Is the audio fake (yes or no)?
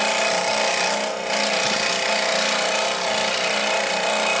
no